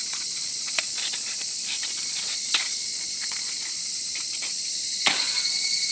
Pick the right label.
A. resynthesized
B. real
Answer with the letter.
A